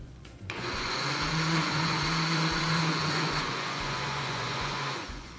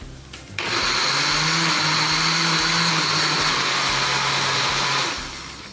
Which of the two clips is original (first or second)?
second